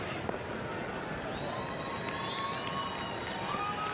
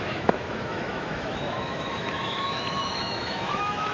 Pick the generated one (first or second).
second